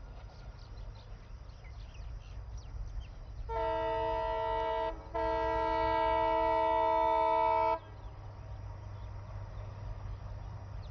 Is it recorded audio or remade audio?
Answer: recorded